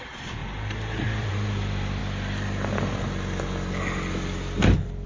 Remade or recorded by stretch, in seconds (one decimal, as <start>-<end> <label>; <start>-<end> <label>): 0.0-2.0 remade; 2.0-5.1 recorded